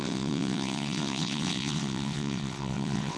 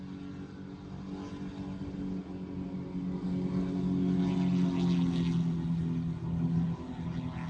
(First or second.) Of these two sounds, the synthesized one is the first